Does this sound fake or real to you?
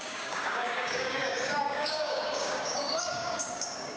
fake